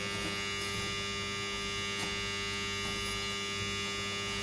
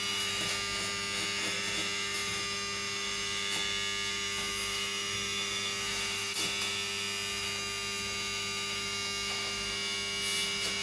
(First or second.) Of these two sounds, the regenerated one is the second